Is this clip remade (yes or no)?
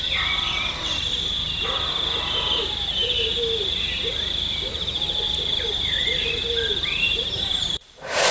yes